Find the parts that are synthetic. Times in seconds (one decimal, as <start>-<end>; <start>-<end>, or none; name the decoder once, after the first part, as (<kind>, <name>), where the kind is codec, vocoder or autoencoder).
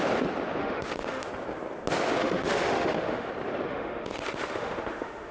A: 0.6-1.3 (autoencoder, DAC-VAE); 2.2-3.3; 3.7-5.3